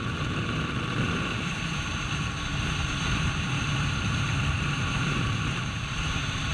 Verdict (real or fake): fake